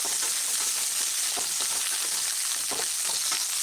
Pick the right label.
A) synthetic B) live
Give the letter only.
B